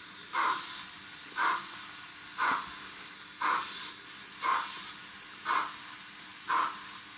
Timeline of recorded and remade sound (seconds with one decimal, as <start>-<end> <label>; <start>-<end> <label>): 0.0-7.2 recorded